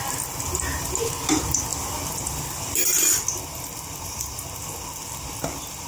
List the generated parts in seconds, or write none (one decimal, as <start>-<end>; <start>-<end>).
none

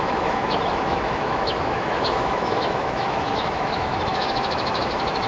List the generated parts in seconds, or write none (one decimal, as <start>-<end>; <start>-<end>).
0.0-5.3

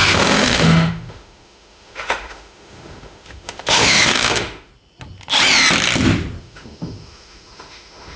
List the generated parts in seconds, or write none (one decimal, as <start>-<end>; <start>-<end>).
0.0-4.7; 6.4-8.2

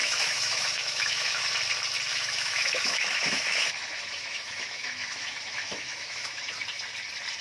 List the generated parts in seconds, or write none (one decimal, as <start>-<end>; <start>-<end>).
0.0-1.4; 2.1-6.5

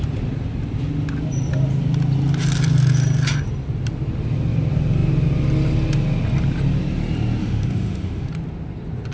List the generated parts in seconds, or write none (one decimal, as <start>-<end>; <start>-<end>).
7.4-8.3